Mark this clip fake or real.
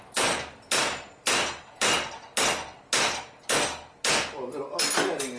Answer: real